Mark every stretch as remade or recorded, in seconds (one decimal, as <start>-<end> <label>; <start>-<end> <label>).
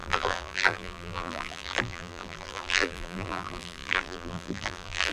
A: 0.0-5.1 remade